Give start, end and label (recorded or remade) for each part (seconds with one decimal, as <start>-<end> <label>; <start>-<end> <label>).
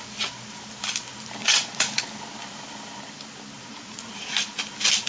0.0-1.4 recorded; 1.4-2.0 remade; 2.0-3.6 recorded; 3.6-4.1 remade; 4.1-5.1 recorded